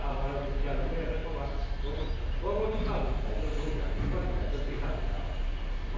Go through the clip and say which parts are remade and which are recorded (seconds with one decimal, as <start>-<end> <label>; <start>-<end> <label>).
0.0-6.0 recorded